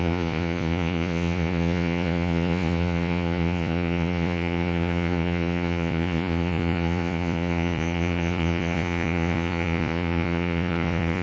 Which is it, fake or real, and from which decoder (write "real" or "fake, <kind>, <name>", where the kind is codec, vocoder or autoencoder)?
fake, vocoder, Vocos